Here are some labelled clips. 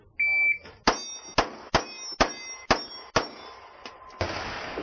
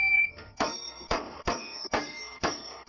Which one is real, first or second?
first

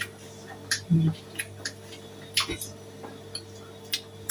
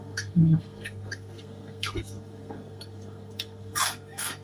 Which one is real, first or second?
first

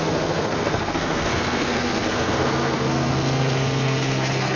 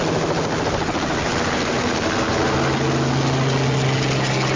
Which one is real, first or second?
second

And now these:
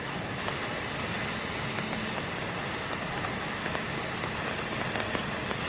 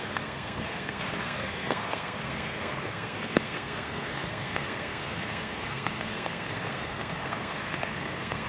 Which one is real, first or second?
first